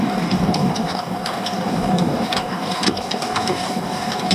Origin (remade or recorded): remade